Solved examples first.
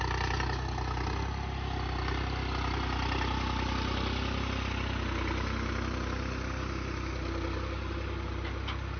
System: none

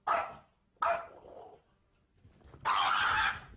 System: none